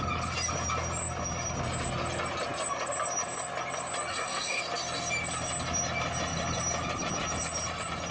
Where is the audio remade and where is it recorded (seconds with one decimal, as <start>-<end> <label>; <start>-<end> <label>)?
0.0-4.1 recorded; 4.1-4.6 remade; 4.6-8.1 recorded